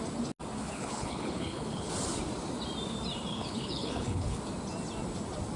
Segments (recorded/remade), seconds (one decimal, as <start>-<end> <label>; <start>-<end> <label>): 0.0-0.6 recorded; 0.6-1.9 remade; 1.9-3.3 recorded; 3.3-4.4 remade; 4.4-5.6 recorded